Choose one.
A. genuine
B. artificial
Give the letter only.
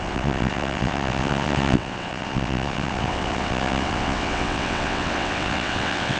B